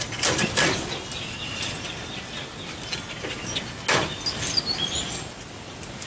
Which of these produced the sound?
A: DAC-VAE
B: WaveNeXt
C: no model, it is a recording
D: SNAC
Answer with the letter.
C